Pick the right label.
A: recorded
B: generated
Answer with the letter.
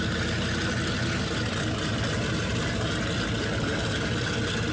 A